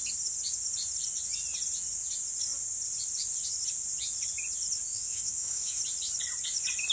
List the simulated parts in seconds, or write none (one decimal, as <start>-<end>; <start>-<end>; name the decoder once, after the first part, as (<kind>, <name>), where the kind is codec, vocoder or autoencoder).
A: 4.9-5.8 (autoencoder, DAC-VAE)